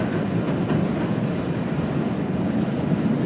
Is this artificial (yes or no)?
no